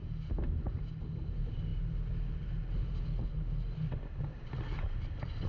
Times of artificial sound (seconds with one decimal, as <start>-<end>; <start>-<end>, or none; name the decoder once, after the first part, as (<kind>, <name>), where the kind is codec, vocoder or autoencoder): none